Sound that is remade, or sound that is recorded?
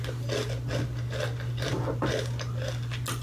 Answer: recorded